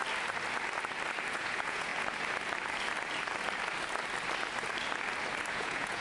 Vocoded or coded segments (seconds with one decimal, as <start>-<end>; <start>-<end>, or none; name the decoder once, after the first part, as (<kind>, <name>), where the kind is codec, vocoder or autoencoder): 1.3-1.9 (vocoder, Vocos); 5.5-6.0